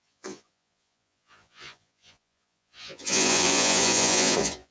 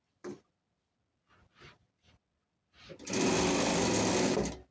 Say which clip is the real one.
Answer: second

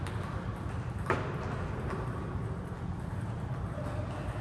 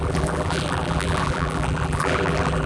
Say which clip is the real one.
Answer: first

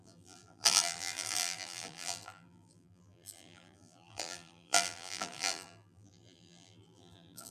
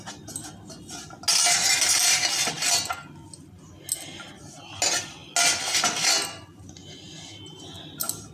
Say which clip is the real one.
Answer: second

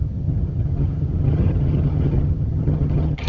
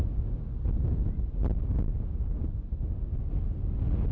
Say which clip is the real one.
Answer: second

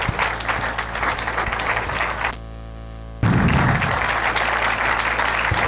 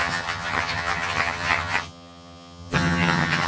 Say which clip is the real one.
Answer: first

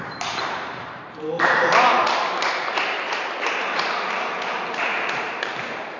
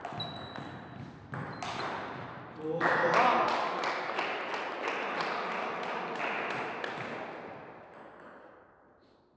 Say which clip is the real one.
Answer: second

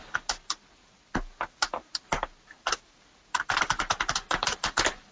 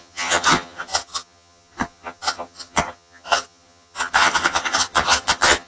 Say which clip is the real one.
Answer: first